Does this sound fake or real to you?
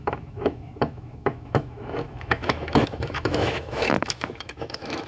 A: fake